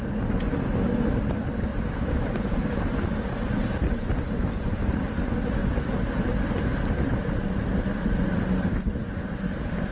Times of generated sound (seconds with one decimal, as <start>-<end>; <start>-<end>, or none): 1.7-5.0; 5.6-6.2